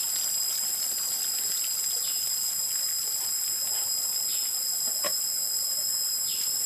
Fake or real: real